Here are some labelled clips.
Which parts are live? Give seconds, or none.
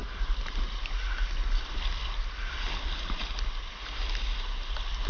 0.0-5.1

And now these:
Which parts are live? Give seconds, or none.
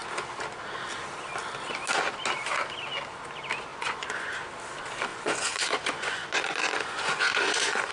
0.0-3.7; 4.3-5.1